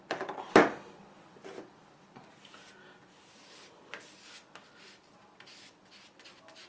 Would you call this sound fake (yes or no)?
no